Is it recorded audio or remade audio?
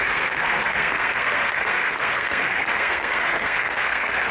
remade